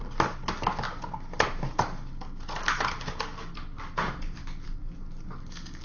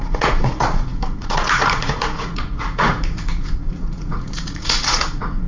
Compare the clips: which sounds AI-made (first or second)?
second